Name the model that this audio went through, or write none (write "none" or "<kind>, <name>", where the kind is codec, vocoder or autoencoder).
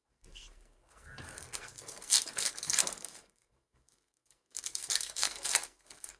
codec, SNAC